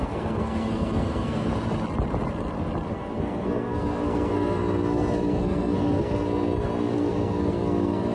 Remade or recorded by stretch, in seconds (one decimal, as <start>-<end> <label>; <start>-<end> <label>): 0.0-1.5 remade; 1.5-2.9 recorded; 2.9-8.1 remade